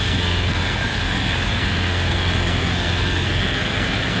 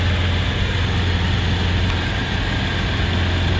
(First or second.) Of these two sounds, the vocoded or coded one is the first